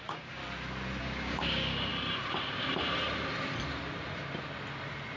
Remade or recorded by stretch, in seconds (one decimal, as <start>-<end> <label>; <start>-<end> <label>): 0.0-0.4 remade; 0.4-1.0 recorded; 1.0-1.9 remade; 1.9-5.2 recorded